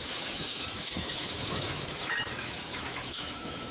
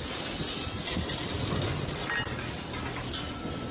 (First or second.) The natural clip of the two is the second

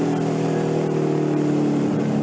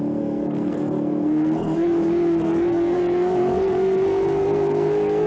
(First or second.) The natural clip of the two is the first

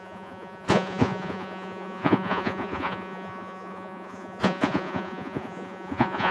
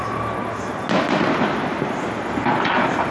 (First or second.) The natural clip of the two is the second